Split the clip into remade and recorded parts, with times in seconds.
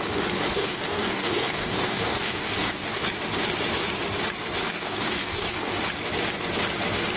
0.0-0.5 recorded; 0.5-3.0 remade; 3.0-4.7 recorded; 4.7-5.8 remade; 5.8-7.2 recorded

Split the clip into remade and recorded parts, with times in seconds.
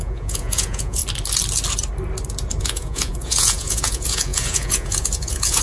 0.0-1.0 remade; 1.0-2.6 recorded; 2.6-5.6 remade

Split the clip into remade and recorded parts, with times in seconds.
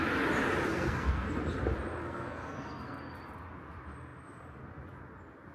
0.0-0.7 recorded; 0.7-1.3 remade; 1.3-2.0 recorded; 2.0-3.0 remade; 3.0-5.5 recorded